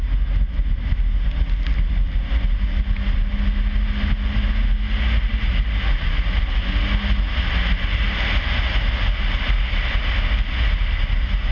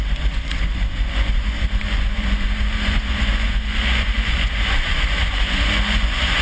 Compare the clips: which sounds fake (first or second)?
second